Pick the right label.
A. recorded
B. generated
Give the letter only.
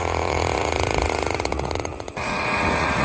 B